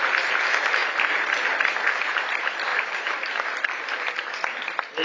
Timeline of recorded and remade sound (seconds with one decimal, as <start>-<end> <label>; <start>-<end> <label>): 0.0-2.7 recorded; 2.7-4.0 remade; 4.0-5.0 recorded

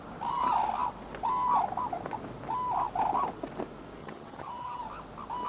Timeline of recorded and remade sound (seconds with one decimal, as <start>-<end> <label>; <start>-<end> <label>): 0.0-4.0 recorded; 4.0-4.8 remade; 4.8-5.5 recorded

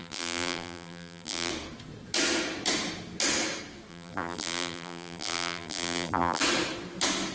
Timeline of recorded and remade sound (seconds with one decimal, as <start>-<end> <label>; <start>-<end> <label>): 0.0-1.5 remade; 1.5-3.9 recorded; 3.9-6.4 remade; 6.4-7.3 recorded

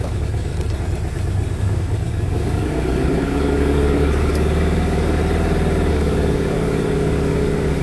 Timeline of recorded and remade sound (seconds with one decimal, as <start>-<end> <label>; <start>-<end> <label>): 0.0-0.5 remade; 0.5-1.6 recorded; 1.6-5.2 remade; 5.2-5.9 recorded; 5.9-7.8 remade